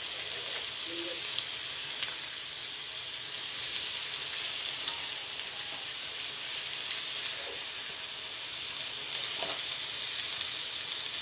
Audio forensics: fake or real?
real